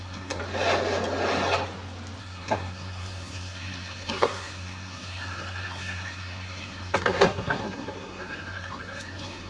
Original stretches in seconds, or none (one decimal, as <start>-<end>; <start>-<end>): 0.4-2.2